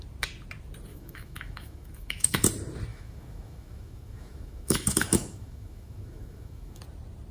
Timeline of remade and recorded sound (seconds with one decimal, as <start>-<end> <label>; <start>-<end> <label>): 0.0-0.9 recorded; 0.9-2.4 remade; 2.4-2.9 recorded; 2.9-6.8 remade; 6.8-7.3 recorded